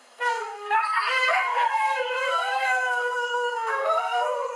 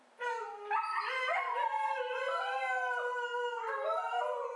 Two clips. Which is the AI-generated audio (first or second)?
first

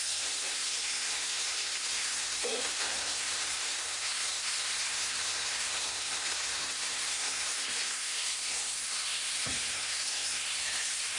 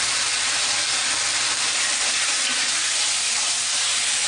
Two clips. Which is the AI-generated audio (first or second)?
first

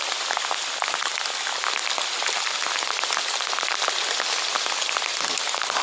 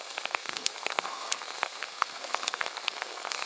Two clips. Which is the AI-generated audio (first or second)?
second